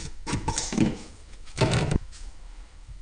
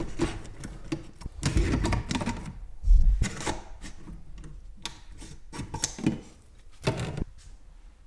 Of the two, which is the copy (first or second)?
first